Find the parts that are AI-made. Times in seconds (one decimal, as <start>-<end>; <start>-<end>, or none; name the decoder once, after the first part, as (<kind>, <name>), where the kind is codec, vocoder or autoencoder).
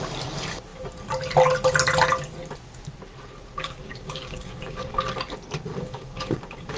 3.6-5.0 (codec, DAC); 5.7-6.8